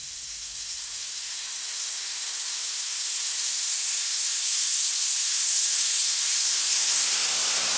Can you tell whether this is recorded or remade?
remade